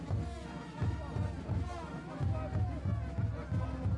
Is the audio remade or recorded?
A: recorded